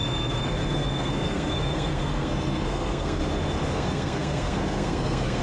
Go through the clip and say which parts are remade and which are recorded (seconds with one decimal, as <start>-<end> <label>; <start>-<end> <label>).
0.0-3.2 remade; 3.2-3.7 recorded; 3.7-5.4 remade